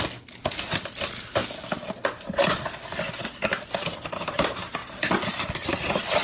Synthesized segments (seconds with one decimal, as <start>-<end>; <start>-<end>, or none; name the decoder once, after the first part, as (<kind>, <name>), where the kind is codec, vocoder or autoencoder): none